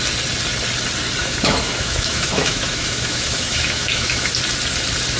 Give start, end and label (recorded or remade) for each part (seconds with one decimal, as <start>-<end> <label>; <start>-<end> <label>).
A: 0.0-1.2 recorded; 1.2-4.3 remade; 4.3-5.2 recorded